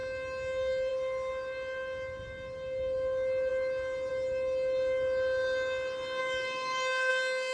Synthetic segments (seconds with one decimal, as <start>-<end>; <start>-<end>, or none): 6.2-7.1